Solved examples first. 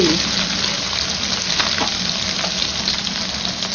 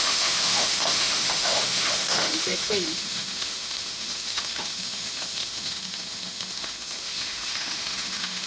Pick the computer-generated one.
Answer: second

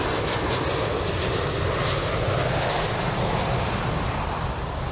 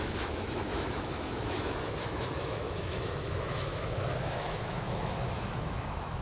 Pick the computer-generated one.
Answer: second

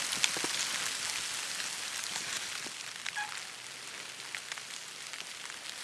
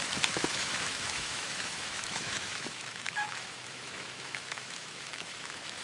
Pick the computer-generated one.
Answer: second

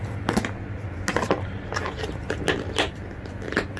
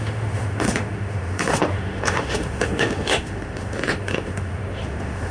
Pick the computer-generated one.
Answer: second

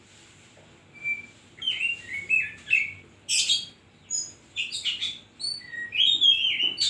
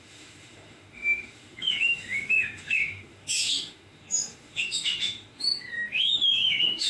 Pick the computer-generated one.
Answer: second